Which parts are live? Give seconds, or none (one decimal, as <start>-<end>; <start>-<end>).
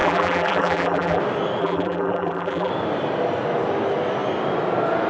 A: 1.2-1.6; 2.7-5.1